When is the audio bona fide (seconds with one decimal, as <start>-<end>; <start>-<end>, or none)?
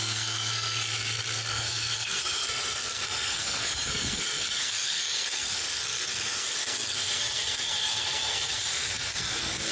none